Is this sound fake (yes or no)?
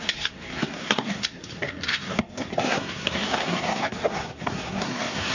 yes